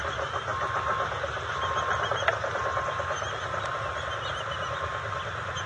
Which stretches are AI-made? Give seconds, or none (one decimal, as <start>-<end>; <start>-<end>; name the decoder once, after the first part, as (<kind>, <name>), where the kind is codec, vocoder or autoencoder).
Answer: none